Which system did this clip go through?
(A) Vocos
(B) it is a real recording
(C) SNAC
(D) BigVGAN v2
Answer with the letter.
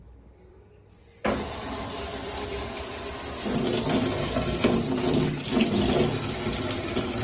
D